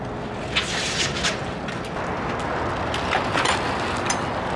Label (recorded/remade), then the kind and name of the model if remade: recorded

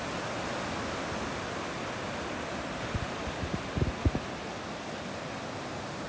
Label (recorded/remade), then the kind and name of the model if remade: recorded